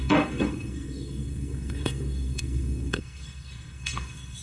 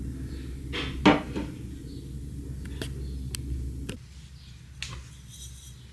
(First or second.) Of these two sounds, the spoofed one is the first